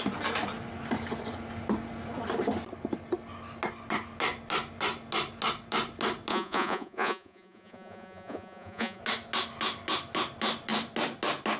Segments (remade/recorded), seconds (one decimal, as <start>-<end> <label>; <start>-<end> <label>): 0.0-6.3 recorded; 6.3-9.0 remade; 9.0-11.6 recorded